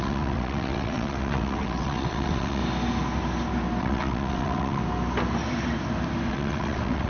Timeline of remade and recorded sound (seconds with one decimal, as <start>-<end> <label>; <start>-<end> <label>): 0.0-2.6 remade; 2.6-3.8 recorded; 3.8-4.8 remade; 4.8-6.3 recorded; 6.3-7.1 remade